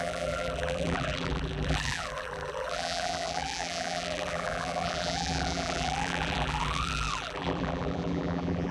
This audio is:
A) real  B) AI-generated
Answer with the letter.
B